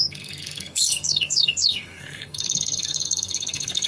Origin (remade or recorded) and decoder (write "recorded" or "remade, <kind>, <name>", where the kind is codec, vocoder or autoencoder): remade, codec, SNAC